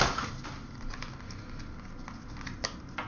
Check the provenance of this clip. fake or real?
real